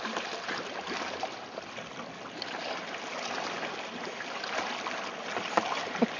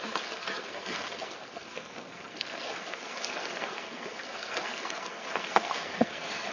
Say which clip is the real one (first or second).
first